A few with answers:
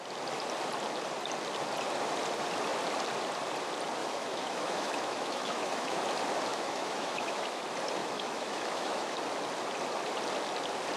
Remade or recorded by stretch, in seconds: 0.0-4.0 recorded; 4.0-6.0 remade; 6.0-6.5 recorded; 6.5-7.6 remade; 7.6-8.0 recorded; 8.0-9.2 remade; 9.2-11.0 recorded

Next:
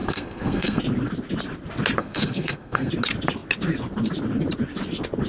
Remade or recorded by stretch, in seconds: 0.0-0.8 remade; 0.8-2.0 recorded; 2.0-2.9 remade; 2.9-5.3 recorded

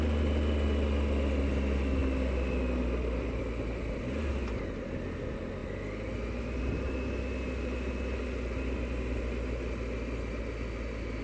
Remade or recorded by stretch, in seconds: 0.0-11.2 recorded

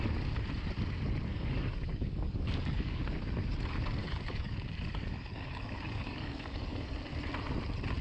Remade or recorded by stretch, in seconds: 0.0-1.3 recorded; 1.3-3.0 remade; 3.0-4.0 recorded; 4.0-7.0 remade; 7.0-8.0 recorded